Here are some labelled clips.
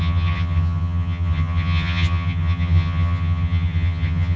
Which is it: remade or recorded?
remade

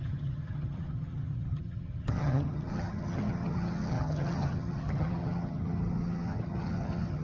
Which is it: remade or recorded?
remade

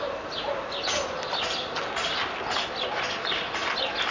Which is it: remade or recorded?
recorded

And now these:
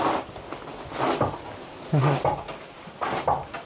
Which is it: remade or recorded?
recorded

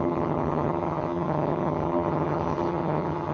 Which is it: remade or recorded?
remade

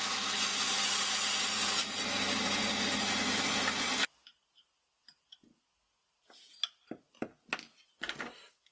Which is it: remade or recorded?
recorded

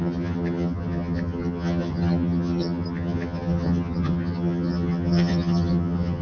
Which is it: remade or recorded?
remade